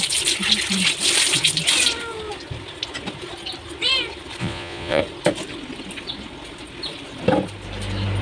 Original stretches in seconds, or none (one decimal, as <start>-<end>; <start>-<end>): 0.0-4.4; 5.0-8.2